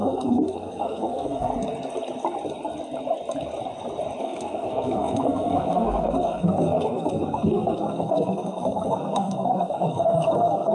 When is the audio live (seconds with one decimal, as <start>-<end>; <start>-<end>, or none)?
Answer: 1.5-4.2